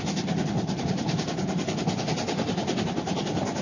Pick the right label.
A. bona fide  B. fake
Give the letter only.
A